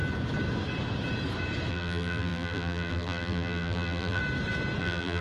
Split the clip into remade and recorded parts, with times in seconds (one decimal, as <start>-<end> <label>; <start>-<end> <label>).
0.0-1.7 recorded; 1.7-4.2 remade; 4.2-4.8 recorded; 4.8-5.2 remade